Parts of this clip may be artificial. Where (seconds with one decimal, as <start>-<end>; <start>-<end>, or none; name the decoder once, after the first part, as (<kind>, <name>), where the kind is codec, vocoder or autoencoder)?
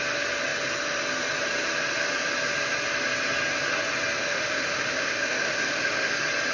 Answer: 4.2-6.1 (autoencoder, DAC-VAE)